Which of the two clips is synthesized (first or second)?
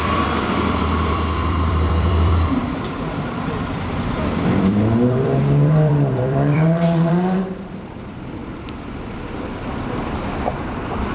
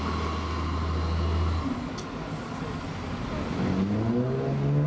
first